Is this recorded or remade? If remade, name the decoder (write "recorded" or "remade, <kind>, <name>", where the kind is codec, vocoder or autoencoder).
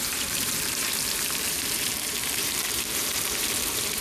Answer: remade, vocoder, BigVGAN v2